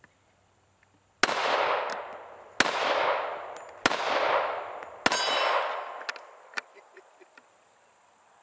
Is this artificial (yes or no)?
no